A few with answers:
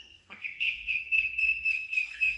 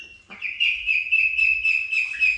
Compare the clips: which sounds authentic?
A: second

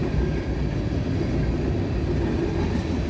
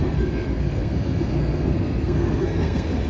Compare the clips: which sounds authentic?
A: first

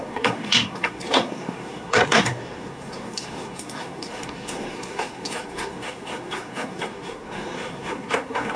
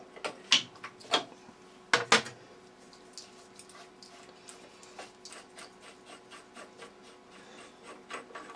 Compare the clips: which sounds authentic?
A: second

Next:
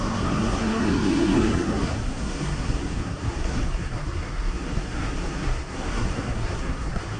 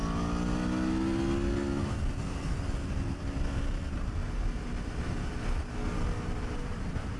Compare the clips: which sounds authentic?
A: second